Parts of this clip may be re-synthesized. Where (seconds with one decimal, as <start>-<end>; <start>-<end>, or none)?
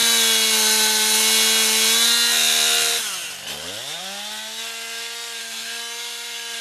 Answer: 5.4-6.6